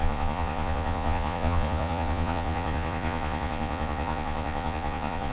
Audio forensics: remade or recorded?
remade